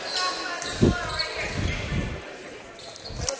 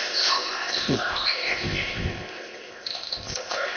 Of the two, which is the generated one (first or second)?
second